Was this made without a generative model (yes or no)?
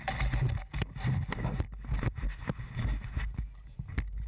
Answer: yes